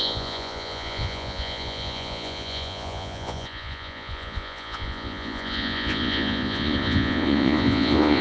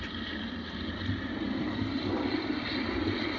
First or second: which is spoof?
first